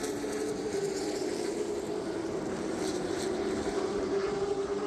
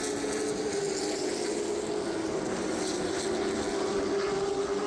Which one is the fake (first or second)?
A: first